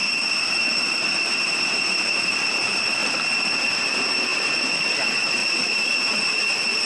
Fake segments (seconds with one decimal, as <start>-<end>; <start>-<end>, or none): 1.2-6.9